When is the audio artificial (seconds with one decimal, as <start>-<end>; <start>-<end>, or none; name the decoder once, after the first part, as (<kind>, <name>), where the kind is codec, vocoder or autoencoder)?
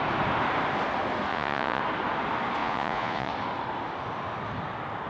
1.3-1.8 (vocoder, Vocos); 2.6-3.3